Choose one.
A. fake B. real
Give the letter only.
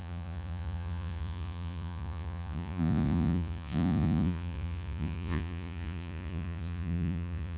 A